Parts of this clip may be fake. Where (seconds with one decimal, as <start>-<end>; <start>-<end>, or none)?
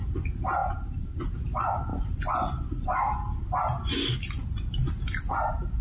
none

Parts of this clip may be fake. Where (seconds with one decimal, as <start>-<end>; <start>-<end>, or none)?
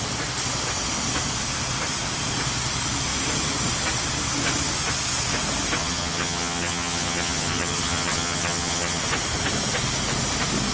5.8-9.0